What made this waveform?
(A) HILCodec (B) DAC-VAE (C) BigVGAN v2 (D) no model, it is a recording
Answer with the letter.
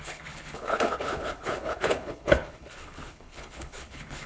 A